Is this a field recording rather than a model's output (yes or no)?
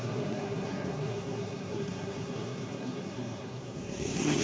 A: no